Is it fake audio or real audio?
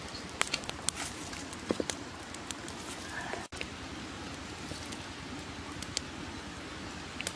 real